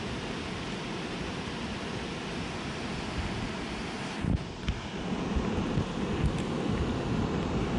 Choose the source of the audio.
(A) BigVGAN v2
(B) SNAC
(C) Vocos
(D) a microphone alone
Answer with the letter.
D